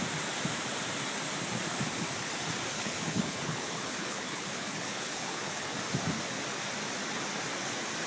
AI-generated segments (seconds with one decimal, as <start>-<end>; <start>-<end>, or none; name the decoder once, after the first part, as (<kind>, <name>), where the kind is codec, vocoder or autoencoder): 2.7-5.8 (codec, HILCodec)